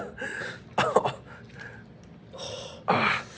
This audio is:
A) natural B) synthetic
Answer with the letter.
A